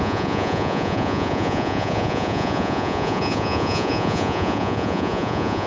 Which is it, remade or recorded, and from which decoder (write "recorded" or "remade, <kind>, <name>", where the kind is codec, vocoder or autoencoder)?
remade, vocoder, Vocos